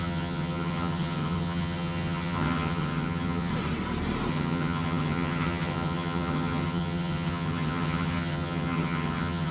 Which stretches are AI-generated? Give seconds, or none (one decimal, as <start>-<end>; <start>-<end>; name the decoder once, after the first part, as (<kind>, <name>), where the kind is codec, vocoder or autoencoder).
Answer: 0.0-3.5 (vocoder, HiFi-GAN); 4.3-9.5